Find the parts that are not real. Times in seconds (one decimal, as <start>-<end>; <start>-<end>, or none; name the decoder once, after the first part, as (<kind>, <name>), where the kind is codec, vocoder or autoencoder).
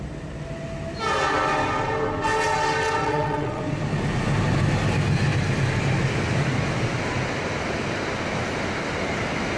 3.0-3.6 (vocoder, WaveNeXt)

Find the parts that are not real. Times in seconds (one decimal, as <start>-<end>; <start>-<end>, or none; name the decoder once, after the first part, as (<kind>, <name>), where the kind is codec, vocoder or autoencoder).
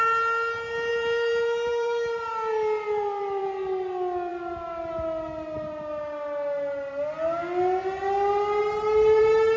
0.9-3.4 (vocoder, BigVGAN v2)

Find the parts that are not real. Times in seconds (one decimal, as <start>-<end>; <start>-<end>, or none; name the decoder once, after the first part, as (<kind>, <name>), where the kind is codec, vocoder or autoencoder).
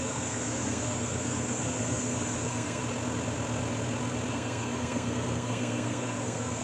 0.0-2.8 (codec, SNAC); 4.3-6.6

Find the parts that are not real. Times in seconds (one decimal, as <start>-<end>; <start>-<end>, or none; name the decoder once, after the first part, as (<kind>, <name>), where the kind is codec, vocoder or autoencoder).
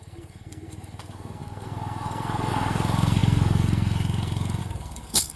0.0-5.4 (codec, SNAC)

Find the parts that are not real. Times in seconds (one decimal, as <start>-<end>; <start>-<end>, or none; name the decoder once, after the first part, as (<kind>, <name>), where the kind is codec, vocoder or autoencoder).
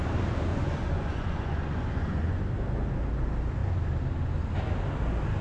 0.5-2.4 (vocoder, Vocos)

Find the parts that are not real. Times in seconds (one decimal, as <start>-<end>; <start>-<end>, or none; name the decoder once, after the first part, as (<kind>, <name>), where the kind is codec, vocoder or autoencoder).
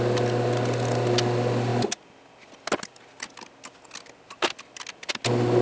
none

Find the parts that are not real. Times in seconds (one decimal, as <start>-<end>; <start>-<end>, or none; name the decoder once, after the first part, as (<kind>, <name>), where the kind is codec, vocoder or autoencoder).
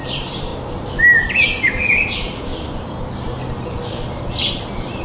0.0-0.5 (vocoder, BigVGAN v2); 1.9-2.5; 3.5-5.0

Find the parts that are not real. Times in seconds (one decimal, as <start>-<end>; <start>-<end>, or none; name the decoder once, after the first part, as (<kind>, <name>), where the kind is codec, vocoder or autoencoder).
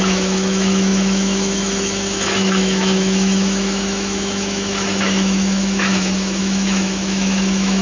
0.0-7.8 (autoencoder, DAC-VAE)